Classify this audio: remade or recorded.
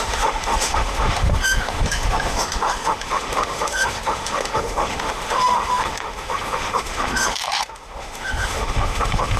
remade